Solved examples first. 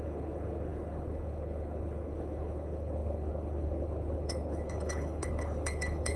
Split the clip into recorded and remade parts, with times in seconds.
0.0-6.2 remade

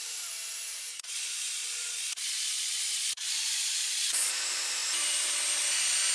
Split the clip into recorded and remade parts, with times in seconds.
0.0-0.9 recorded; 0.9-4.3 remade; 4.3-6.1 recorded

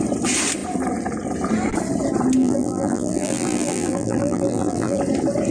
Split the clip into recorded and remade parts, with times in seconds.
0.0-2.4 recorded; 2.4-5.0 remade; 5.0-5.5 recorded